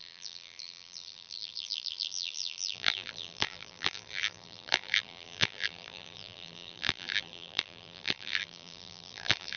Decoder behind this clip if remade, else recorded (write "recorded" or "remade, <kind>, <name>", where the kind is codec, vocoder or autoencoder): remade, vocoder, BigVGAN v2